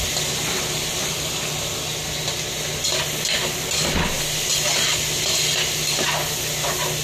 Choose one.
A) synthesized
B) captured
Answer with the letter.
B